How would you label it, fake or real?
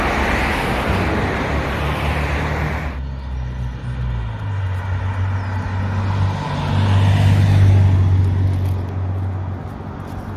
real